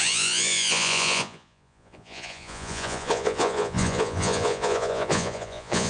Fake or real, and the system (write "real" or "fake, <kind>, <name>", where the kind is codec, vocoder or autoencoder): fake, vocoder, Vocos